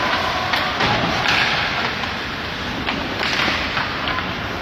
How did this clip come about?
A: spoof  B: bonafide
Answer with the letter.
B